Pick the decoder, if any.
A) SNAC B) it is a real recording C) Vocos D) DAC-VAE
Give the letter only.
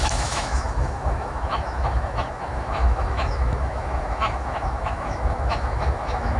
D